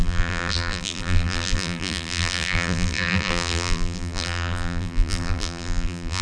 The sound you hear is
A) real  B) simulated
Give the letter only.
B